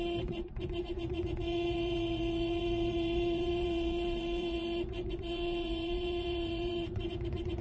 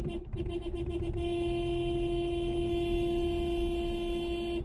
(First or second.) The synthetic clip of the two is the first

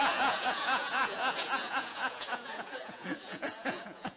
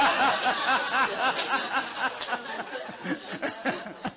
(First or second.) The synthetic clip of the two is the first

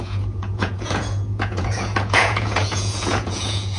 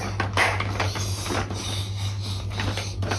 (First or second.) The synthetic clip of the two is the first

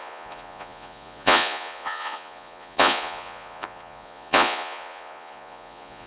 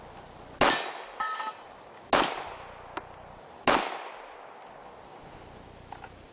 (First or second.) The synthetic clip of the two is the first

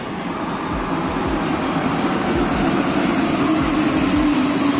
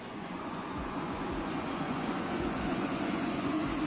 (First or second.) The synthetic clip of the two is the second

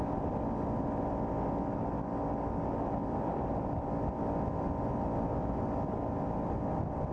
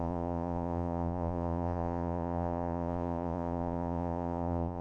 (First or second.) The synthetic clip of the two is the second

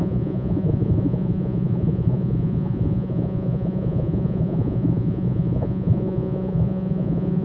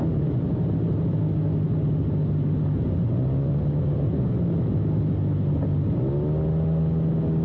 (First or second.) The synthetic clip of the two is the first